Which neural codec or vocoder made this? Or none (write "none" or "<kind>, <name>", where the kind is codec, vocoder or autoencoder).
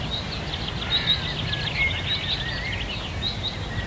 none